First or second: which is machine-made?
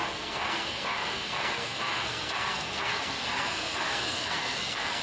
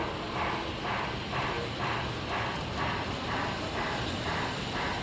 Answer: first